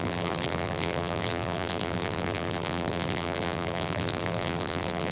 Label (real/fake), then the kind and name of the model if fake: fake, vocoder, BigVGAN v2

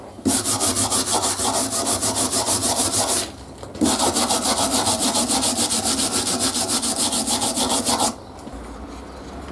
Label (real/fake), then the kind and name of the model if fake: real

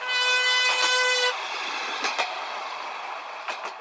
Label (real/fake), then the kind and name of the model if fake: real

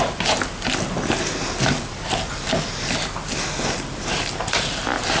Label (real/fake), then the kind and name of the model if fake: real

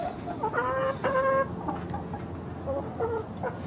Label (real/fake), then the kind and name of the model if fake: real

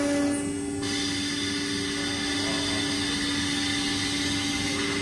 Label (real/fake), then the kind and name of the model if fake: real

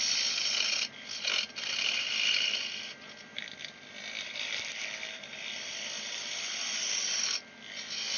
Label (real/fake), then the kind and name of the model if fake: fake, vocoder, BigVGAN v2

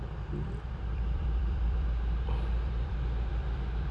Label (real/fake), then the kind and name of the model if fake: fake, vocoder, BigVGAN v2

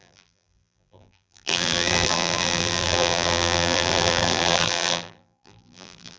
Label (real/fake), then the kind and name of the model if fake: fake, vocoder, BigVGAN v2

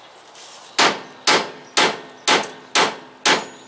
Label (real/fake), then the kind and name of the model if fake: real